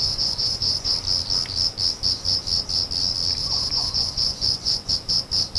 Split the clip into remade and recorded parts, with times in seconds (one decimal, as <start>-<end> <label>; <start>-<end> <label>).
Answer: 0.0-0.9 remade; 0.9-3.4 recorded; 3.4-4.9 remade; 4.9-5.6 recorded